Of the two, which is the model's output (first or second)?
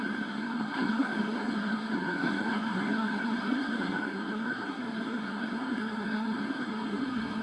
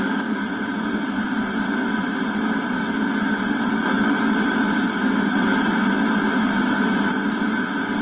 first